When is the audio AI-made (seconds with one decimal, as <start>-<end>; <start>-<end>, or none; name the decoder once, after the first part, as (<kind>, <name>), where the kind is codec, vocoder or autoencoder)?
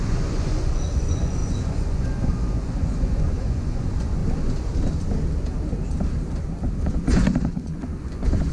0.0-4.2 (vocoder, Vocos); 6.8-8.5